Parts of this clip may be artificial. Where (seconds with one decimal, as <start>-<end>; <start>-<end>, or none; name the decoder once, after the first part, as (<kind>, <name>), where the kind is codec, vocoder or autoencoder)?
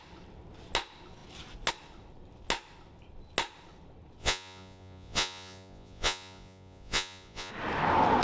4.2-7.5 (vocoder, Vocos)